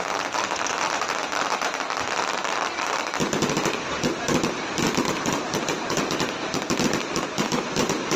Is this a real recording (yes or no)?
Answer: yes